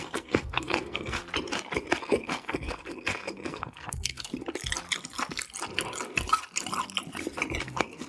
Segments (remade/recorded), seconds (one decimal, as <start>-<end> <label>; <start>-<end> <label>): 0.0-1.2 remade; 1.2-2.0 recorded; 2.0-4.3 remade; 4.3-7.6 recorded; 7.6-8.1 remade

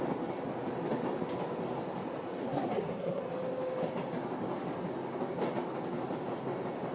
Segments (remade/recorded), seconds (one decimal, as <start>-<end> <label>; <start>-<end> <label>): 0.0-2.4 recorded; 2.4-3.2 remade; 3.2-6.9 recorded

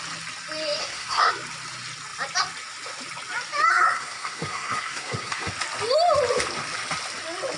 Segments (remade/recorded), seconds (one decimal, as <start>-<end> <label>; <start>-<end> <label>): 0.0-0.8 recorded; 0.8-1.3 remade; 1.3-3.7 recorded; 3.7-5.5 remade; 5.5-7.6 recorded

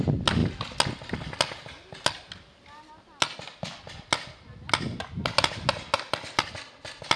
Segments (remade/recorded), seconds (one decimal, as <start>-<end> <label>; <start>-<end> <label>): 0.0-7.2 recorded

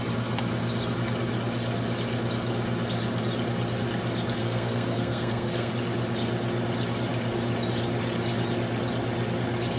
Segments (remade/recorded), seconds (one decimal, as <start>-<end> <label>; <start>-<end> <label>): 0.0-4.4 recorded; 4.4-5.7 remade; 5.7-9.8 recorded

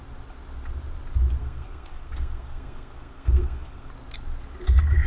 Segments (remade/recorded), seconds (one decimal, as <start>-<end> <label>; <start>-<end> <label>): 0.0-1.4 recorded; 1.4-3.9 remade; 3.9-5.1 recorded

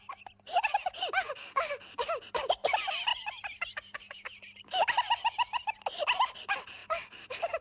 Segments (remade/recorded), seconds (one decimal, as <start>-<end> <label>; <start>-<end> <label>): 0.0-7.6 recorded